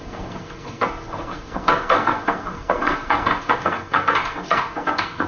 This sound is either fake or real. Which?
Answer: fake